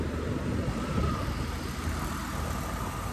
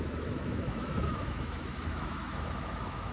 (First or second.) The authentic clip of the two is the first